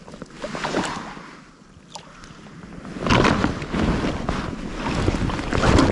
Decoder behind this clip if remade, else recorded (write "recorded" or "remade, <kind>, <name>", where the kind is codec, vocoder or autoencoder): recorded